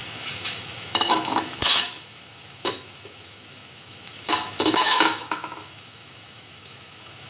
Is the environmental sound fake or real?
fake